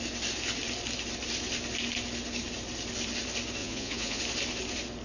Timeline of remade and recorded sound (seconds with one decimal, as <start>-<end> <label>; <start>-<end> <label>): 0.0-3.6 recorded; 3.6-4.2 remade; 4.2-5.0 recorded